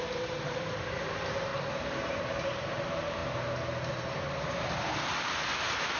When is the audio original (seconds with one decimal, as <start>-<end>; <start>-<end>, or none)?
1.5-2.3; 3.2-5.1